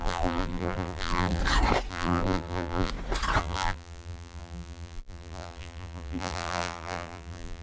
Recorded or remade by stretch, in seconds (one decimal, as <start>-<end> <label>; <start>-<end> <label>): 0.0-1.4 remade; 1.4-1.9 recorded; 1.9-2.9 remade; 2.9-3.4 recorded; 3.4-7.6 remade

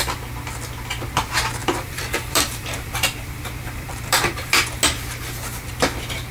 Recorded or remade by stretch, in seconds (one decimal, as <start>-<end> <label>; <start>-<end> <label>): 0.0-1.6 recorded; 1.6-4.5 remade; 4.5-6.3 recorded

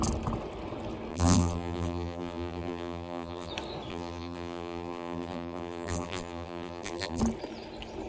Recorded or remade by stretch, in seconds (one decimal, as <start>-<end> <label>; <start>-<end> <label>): 0.0-1.1 recorded; 1.1-3.5 remade; 3.5-3.9 recorded; 3.9-7.2 remade; 7.2-8.1 recorded